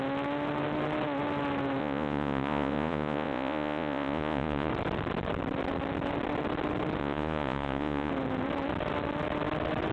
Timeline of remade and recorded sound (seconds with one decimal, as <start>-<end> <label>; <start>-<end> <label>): 0.0-1.8 recorded; 1.8-4.7 remade; 4.7-7.0 recorded; 7.0-8.1 remade; 8.1-9.9 recorded